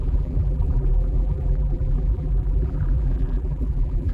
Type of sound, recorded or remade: remade